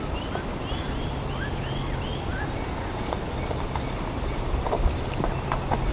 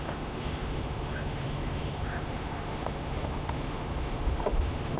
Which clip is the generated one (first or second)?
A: second